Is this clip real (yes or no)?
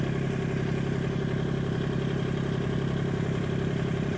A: no